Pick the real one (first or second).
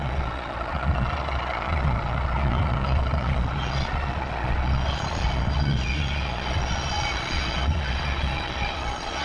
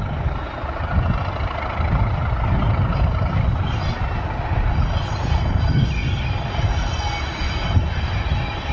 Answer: second